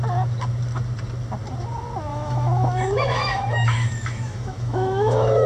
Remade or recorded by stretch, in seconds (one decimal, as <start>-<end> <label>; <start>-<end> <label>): 0.0-2.1 recorded; 2.1-5.5 remade